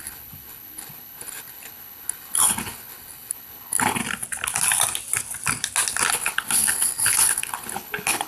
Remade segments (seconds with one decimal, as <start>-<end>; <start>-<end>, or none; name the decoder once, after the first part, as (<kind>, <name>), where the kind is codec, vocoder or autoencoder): 0.0-4.0 (codec, HILCodec); 6.1-8.3